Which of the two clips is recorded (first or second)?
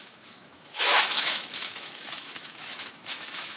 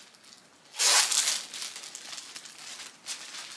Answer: second